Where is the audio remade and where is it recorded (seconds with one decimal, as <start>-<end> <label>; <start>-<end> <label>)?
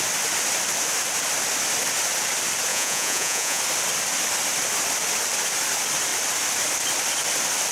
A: 0.0-2.7 recorded; 2.7-3.6 remade; 3.6-7.7 recorded